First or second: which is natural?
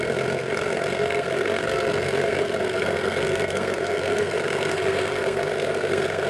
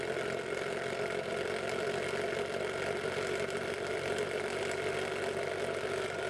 second